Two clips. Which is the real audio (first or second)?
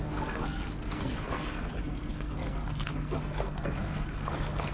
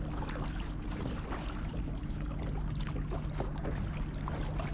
second